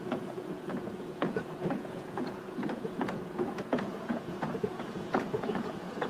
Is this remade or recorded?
remade